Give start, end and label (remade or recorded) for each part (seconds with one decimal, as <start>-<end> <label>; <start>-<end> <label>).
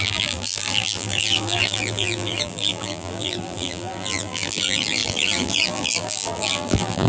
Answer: 0.0-7.1 remade